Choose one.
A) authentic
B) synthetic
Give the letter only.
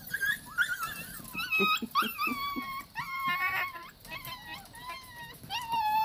A